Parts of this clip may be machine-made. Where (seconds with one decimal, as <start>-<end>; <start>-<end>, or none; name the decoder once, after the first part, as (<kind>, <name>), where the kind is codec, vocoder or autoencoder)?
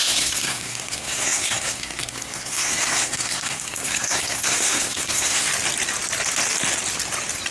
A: 0.0-5.5 (codec, SNAC)